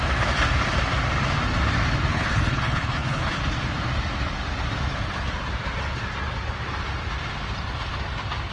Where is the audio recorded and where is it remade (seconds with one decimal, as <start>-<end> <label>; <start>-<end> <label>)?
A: 0.0-2.1 recorded; 2.1-3.4 remade; 3.4-8.5 recorded